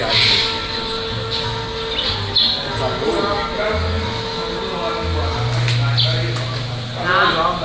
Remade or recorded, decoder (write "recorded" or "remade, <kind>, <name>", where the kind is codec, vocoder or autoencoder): recorded